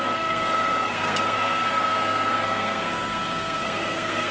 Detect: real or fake fake